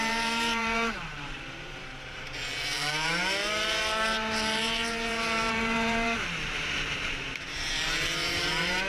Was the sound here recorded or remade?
remade